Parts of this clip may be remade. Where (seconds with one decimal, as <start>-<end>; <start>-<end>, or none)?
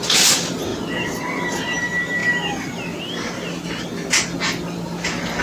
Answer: none